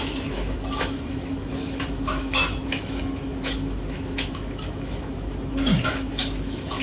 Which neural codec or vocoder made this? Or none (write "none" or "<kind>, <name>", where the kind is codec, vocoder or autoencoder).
autoencoder, DAC-VAE